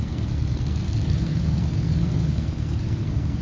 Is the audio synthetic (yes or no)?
yes